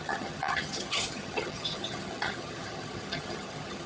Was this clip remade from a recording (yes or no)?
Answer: yes